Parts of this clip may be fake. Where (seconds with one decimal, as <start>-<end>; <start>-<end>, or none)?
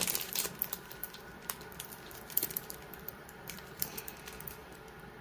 1.0-4.0